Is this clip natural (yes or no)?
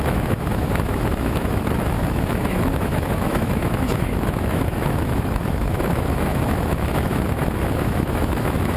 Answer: no